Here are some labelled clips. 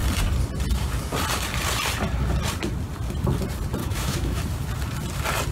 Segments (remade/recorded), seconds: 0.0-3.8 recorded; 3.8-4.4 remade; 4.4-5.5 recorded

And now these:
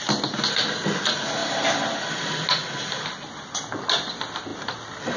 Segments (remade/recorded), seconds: 0.0-5.2 recorded

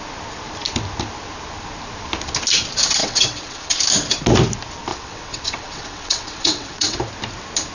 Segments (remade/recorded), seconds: 0.0-3.0 recorded; 3.0-3.8 remade; 3.8-4.9 recorded; 4.9-7.0 remade; 7.0-7.7 recorded